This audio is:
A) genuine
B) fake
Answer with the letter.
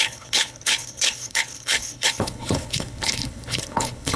B